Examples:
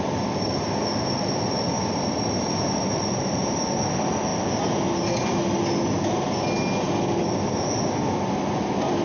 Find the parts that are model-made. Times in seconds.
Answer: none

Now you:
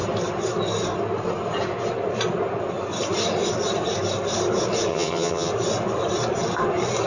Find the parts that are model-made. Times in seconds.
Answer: 4.9-5.5 (vocoder, HiFi-GAN)

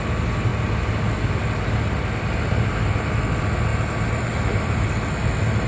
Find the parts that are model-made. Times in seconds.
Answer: 3.7-4.8 (vocoder, BigVGAN v2)

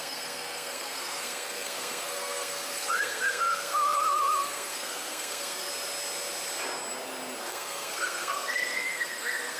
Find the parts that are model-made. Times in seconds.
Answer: 0.0-5.7 (codec, SNAC); 7.4-9.6

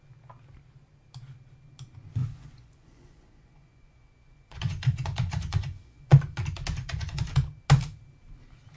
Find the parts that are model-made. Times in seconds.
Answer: 2.2-6.2 (vocoder, Vocos); 6.8-7.3

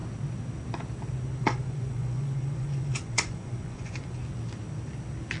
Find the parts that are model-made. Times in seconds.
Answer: 1.4-4.2 (vocoder, Vocos)

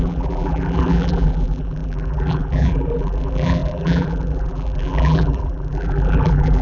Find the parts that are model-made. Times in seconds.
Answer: 0.0-6.6 (vocoder, BigVGAN v2)

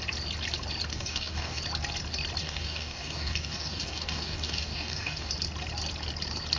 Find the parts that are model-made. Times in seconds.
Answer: 0.9-1.6 (codec, DAC); 2.4-5.3